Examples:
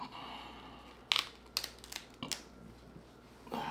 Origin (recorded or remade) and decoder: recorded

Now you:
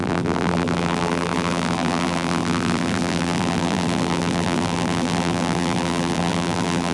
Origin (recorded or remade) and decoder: remade, vocoder, BigVGAN v2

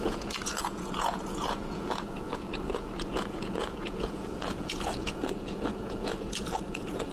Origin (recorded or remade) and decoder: remade, vocoder, Vocos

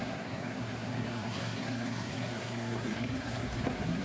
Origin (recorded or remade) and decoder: remade, codec, SNAC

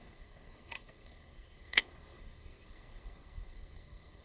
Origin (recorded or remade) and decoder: remade, codec, SNAC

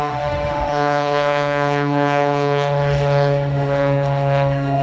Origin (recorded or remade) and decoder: remade, autoencoder, DAC-VAE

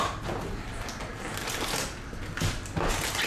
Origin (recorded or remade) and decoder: recorded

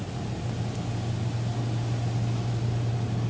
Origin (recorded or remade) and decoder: recorded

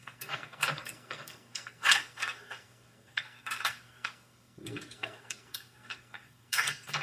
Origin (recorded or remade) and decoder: remade, codec, SNAC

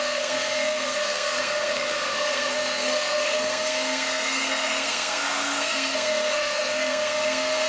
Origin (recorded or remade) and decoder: remade, codec, SNAC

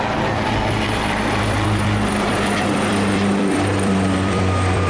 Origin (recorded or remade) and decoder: remade, vocoder, BigVGAN v2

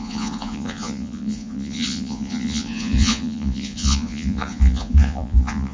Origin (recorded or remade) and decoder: remade, vocoder, Vocos